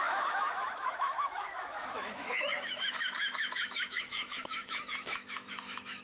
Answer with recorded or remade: remade